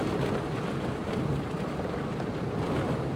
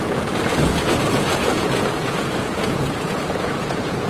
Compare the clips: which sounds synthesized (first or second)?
second